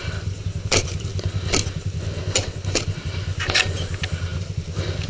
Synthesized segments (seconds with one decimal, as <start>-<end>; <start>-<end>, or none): none